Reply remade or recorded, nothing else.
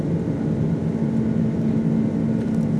recorded